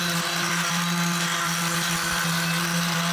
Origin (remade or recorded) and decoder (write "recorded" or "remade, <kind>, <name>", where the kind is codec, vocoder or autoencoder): recorded